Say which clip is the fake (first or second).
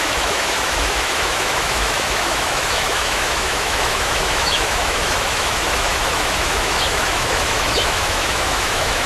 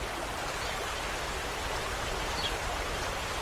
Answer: first